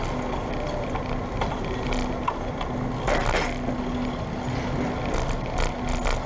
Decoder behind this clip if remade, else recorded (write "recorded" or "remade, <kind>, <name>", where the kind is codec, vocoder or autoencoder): recorded